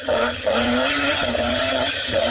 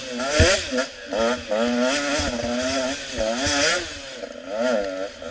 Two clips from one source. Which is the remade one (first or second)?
first